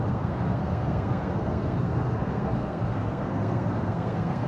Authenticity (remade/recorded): remade